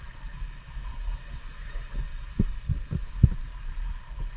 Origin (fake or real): real